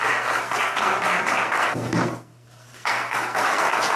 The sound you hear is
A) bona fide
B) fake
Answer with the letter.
B